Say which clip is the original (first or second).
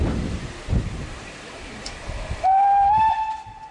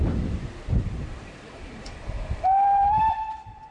first